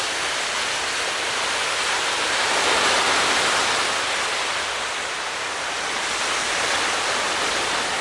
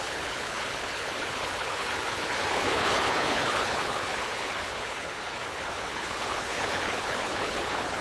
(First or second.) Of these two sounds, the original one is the first